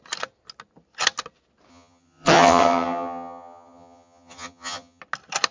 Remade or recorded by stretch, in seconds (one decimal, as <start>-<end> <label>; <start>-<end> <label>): 0.0-1.7 recorded; 1.7-5.0 remade; 5.0-5.5 recorded